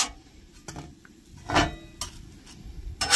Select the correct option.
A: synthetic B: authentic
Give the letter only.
B